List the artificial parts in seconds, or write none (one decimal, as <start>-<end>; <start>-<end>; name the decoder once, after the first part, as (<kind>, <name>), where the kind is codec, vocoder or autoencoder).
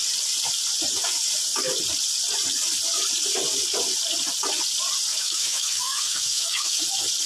5.1-6.8 (autoencoder, DAC-VAE)